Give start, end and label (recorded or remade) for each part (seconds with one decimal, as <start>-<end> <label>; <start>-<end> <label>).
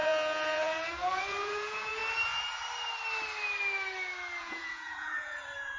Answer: 0.0-2.0 remade; 2.0-4.4 recorded; 4.4-5.8 remade